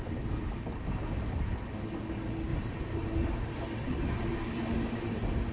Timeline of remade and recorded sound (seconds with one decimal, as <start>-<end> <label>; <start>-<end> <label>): 0.0-5.5 recorded